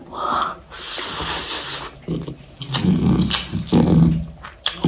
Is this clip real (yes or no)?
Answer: yes